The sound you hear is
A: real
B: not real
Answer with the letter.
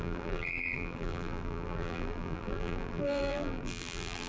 B